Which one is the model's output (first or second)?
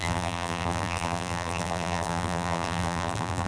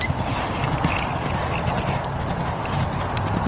first